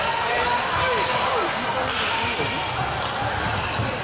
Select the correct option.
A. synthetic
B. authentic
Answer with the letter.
B